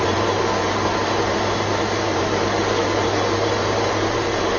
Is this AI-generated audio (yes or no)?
yes